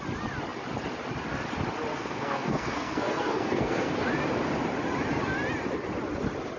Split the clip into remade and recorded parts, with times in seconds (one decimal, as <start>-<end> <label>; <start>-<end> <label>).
0.0-1.9 recorded; 1.9-3.9 remade; 3.9-6.6 recorded